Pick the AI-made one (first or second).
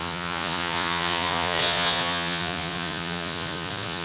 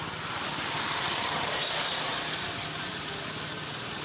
first